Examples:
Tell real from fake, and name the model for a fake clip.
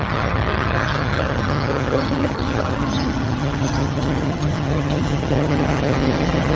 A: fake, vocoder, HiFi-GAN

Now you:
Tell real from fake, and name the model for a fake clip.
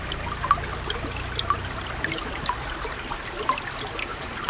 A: real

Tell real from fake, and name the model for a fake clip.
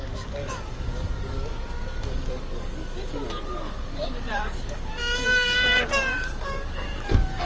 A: fake, codec, DAC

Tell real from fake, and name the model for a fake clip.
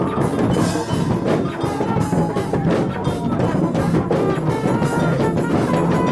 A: real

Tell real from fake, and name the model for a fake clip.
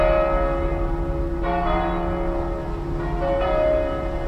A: real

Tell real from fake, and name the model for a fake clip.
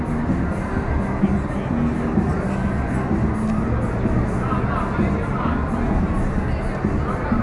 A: real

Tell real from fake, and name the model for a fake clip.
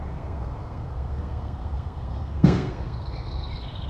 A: fake, codec, SNAC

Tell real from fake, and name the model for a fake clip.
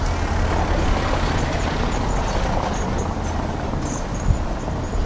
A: real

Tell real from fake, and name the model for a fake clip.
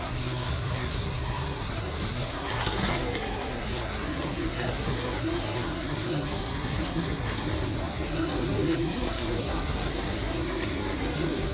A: fake, codec, SNAC